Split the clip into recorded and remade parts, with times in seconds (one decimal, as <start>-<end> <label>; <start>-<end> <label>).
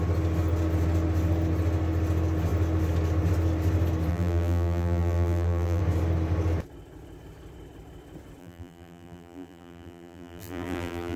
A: 0.0-4.1 recorded; 4.1-5.8 remade; 5.8-8.4 recorded; 8.4-11.2 remade